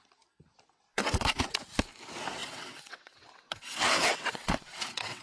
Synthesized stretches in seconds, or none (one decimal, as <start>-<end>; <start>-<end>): 0.9-1.4; 2.4-5.2